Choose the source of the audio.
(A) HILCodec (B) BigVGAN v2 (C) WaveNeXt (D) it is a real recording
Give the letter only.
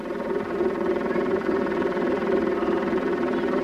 B